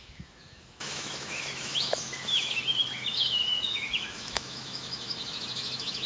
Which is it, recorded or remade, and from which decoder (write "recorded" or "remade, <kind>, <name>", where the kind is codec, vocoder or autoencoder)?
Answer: remade, autoencoder, DAC-VAE